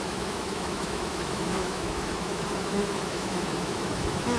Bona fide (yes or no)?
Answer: no